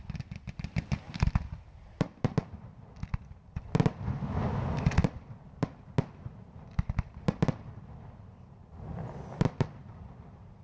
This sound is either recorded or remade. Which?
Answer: recorded